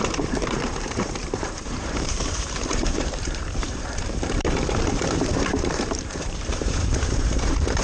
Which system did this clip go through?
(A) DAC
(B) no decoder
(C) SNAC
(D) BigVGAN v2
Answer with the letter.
D